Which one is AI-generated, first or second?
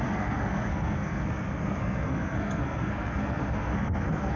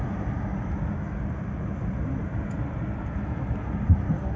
first